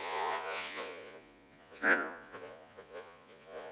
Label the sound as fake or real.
fake